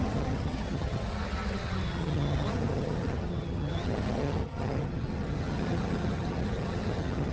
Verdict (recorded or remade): remade